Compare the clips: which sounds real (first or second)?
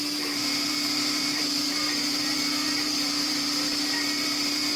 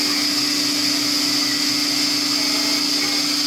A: second